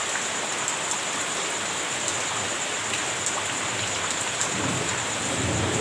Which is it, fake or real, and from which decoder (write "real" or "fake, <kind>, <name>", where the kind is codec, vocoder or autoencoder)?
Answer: real